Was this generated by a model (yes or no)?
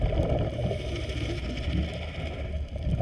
no